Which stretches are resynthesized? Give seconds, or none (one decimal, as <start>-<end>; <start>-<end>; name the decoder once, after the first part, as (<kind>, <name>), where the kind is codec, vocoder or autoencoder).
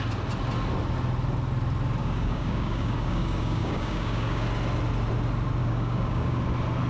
2.0-4.4 (codec, DAC); 5.6-6.4